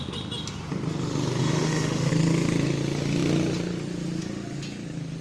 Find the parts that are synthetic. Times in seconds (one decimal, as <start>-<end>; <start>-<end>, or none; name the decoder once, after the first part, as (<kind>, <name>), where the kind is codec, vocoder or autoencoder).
1.4-2.1 (autoencoder, DAC-VAE)